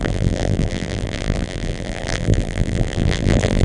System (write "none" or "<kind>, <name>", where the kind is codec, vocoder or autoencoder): vocoder, BigVGAN v2